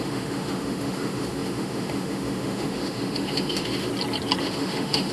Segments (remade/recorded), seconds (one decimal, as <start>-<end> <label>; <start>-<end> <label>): 0.0-3.9 remade; 3.9-4.4 recorded; 4.4-5.1 remade